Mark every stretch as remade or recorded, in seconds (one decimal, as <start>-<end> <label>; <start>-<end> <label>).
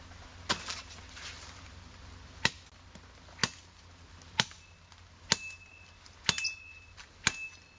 0.0-7.8 recorded